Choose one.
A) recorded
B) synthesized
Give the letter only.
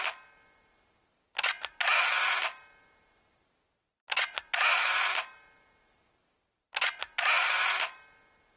A